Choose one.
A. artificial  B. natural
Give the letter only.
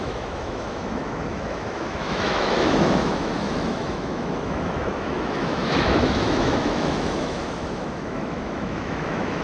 A